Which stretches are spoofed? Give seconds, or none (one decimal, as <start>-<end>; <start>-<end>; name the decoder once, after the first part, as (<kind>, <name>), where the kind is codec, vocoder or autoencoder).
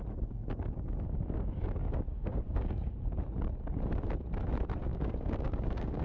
0.4-3.2 (codec, DAC); 4.9-6.0